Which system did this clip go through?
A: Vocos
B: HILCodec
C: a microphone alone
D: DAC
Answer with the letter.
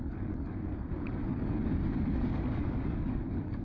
D